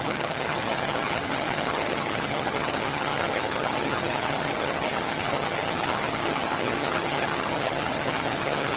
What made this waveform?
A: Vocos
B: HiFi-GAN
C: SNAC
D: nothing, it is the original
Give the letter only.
B